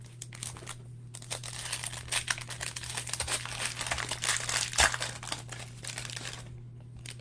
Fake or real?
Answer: real